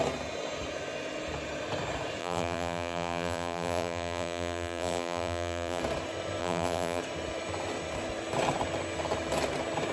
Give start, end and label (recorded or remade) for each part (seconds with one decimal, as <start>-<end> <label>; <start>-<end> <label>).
0.0-2.2 recorded; 2.2-5.8 remade; 5.8-6.4 recorded; 6.4-7.0 remade; 7.0-9.9 recorded